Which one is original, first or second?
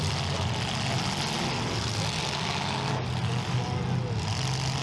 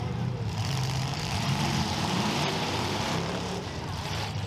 first